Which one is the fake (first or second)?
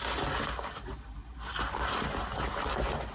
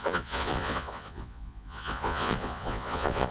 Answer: second